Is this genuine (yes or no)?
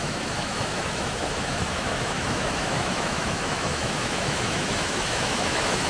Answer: no